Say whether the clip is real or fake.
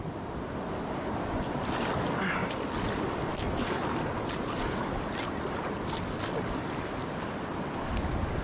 real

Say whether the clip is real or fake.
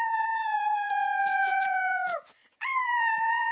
fake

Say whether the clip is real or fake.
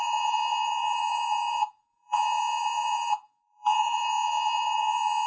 fake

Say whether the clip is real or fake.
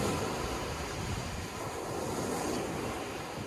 real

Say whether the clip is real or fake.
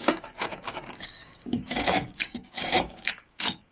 fake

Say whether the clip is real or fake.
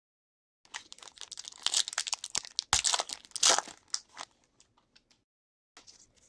real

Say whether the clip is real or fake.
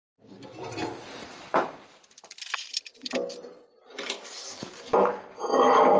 real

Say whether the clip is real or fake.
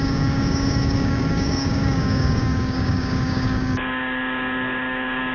fake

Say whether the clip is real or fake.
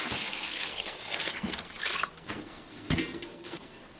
fake